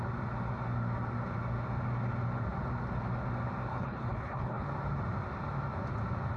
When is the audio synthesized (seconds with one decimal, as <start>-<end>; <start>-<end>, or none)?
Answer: 3.7-4.7